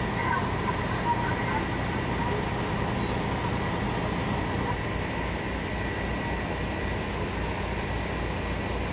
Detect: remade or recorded recorded